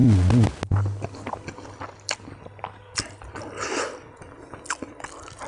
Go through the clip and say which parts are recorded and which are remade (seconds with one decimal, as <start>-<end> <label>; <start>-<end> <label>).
0.0-5.5 recorded